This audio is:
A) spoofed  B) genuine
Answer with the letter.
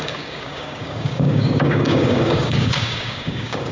A